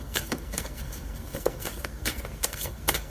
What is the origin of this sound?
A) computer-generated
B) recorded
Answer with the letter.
A